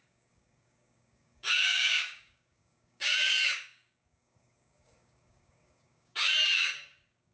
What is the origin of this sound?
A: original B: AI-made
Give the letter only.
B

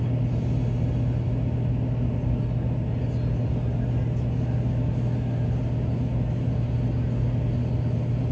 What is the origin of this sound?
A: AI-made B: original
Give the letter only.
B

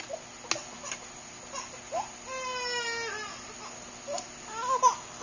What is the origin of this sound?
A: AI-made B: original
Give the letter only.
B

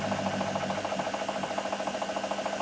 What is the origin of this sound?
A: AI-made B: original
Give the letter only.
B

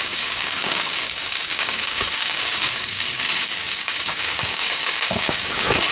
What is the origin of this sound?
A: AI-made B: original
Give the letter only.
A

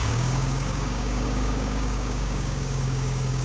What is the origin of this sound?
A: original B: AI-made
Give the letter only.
B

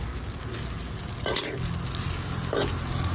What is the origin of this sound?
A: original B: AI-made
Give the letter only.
A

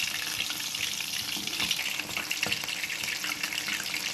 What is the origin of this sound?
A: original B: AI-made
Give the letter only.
A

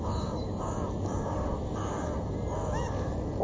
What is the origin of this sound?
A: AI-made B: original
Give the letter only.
B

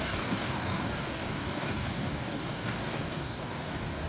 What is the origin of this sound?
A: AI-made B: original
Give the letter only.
A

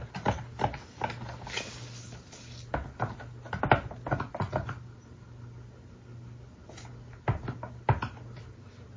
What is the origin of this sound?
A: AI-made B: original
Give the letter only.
B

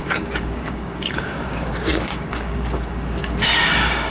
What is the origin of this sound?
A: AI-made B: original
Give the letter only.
A